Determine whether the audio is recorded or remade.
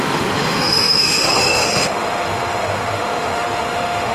remade